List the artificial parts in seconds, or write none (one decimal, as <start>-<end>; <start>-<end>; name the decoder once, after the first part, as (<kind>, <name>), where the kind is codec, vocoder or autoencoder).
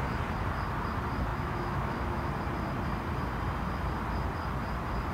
1.3-2.3 (autoencoder, DAC-VAE)